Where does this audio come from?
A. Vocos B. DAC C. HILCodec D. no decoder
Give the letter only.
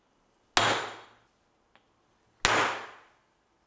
D